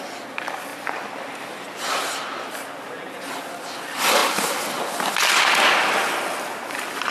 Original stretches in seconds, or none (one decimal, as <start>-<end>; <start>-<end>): 0.0-0.7; 1.8-4.2; 4.8-7.1

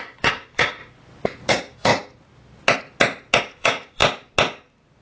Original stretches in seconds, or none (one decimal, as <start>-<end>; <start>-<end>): 0.8-1.5; 1.9-3.4; 4.0-5.0